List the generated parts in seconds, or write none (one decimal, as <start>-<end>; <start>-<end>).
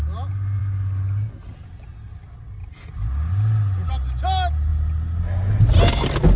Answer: none